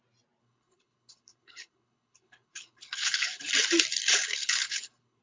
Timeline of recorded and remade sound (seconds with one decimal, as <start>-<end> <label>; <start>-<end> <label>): 0.0-0.4 recorded; 0.4-3.5 remade; 3.5-4.1 recorded; 4.1-5.2 remade